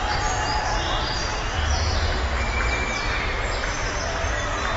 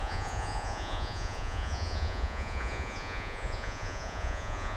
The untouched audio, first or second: first